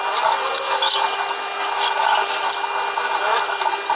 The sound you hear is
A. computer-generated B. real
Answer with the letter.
B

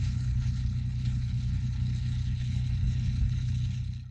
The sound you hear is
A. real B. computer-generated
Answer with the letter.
B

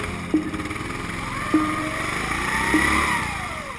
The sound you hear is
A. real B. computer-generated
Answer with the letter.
A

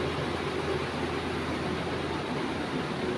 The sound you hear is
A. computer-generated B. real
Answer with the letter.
B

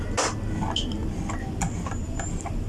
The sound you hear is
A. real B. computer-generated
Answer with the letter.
A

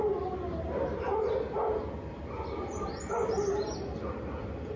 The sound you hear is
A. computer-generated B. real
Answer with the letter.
B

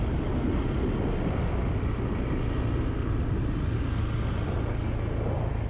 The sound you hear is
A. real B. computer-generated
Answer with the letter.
A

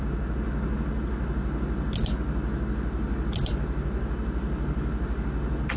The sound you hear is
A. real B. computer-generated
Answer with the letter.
A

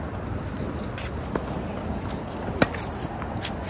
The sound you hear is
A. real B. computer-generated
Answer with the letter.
A